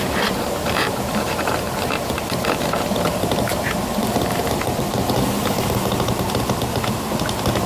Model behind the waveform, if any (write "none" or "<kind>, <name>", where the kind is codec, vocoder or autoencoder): vocoder, BigVGAN v2